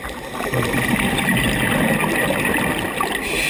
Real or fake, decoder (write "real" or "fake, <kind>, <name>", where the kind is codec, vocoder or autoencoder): real